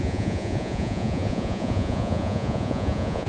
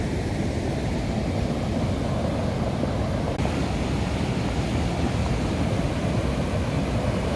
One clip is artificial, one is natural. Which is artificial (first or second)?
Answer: first